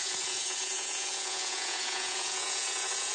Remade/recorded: remade